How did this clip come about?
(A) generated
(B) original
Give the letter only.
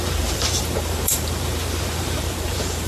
A